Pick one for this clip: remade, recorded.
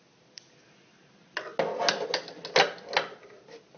recorded